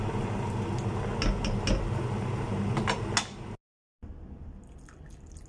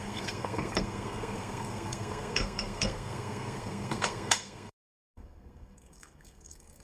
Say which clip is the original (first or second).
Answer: first